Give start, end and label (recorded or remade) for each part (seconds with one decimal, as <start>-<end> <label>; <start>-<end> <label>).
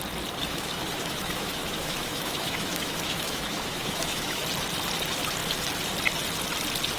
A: 0.0-0.4 recorded; 0.4-4.4 remade; 4.4-7.0 recorded